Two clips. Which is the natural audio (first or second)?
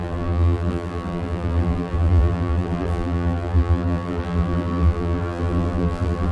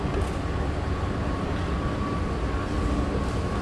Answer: second